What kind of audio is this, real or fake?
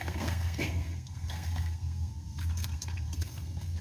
fake